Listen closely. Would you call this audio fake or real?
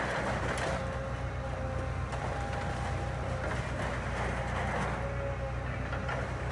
real